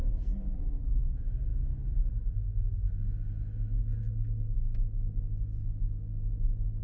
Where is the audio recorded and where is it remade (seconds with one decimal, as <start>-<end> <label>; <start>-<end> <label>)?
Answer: 0.0-0.6 remade; 0.6-4.0 recorded; 4.0-5.2 remade; 5.2-6.8 recorded